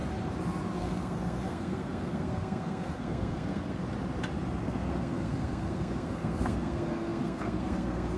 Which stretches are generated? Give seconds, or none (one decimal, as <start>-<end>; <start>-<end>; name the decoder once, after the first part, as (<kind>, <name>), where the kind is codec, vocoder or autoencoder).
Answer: 0.8-3.8 (codec, SNAC); 4.6-8.2